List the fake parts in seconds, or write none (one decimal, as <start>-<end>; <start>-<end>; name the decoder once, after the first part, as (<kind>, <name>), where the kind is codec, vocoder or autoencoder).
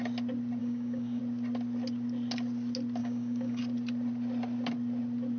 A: 0.6-1.2 (codec, DAC); 3.0-3.6